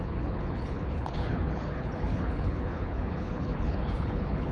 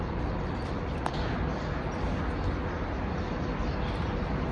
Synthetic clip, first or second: first